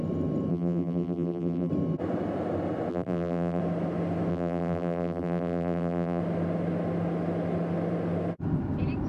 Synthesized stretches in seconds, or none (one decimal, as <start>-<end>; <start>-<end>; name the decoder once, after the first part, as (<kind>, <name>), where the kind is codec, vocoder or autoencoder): 0.5-1.7 (vocoder, BigVGAN v2); 2.9-3.6; 4.3-6.2